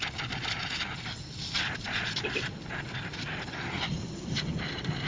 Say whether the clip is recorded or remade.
recorded